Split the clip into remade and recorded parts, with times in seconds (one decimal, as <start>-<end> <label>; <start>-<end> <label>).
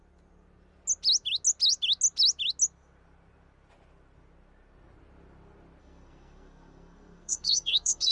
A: 0.0-5.8 recorded; 5.8-8.1 remade